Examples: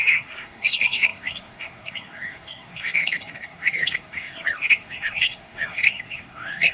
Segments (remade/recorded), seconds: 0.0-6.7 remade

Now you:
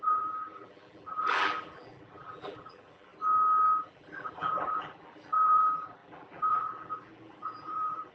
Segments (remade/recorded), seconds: 0.0-3.1 remade; 3.1-3.8 recorded; 3.8-8.1 remade

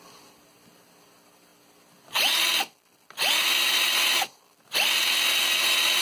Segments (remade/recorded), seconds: 0.0-6.0 recorded

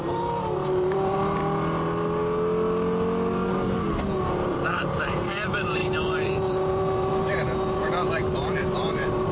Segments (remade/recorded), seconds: 0.0-1.4 remade; 1.4-3.5 recorded; 3.5-9.3 remade